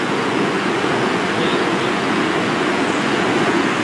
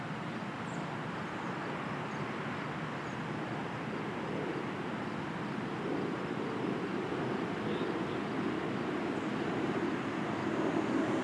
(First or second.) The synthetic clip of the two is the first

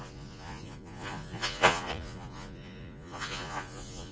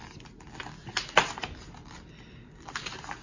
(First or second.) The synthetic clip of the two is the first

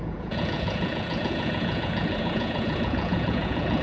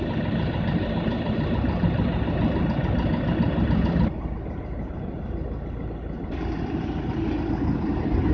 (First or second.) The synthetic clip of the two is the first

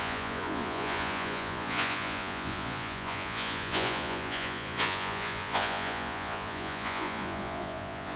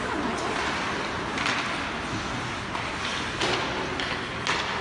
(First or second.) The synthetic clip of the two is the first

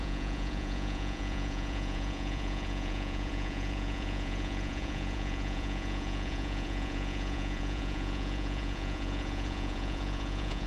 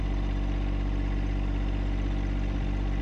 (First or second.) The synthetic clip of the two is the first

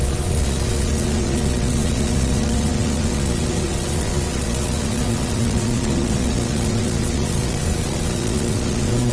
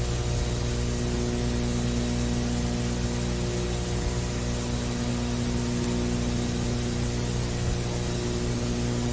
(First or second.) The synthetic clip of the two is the first